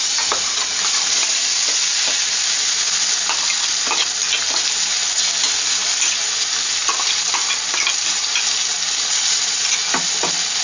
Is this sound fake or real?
real